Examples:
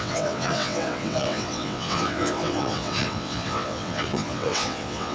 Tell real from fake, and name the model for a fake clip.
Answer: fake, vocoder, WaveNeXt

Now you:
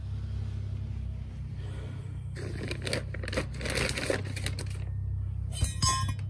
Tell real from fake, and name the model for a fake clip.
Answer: real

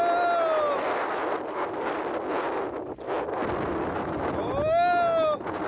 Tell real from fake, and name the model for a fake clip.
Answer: real